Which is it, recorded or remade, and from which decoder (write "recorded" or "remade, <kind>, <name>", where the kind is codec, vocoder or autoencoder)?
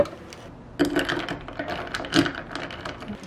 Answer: recorded